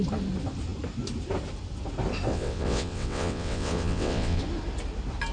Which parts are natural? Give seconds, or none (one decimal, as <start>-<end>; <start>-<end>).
0.0-2.3; 4.4-5.3